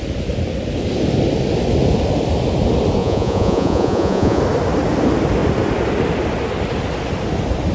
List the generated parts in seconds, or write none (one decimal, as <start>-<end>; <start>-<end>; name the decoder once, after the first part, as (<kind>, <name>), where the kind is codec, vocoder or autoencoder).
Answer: 3.0-4.4 (vocoder, Vocos)